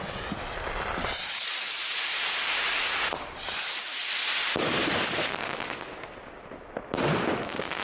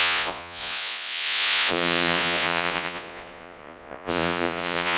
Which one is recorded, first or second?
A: first